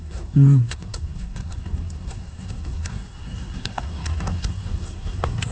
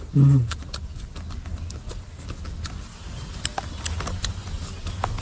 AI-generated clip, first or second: first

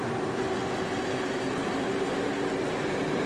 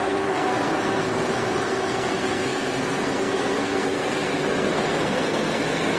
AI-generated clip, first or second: second